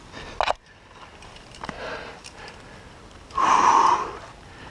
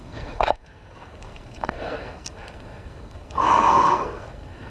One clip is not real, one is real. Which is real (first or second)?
first